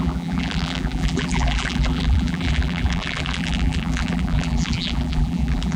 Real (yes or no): no